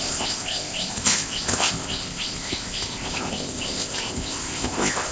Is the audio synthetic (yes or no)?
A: yes